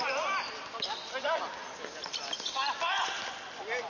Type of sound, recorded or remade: recorded